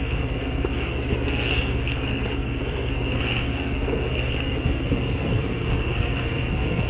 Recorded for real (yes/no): no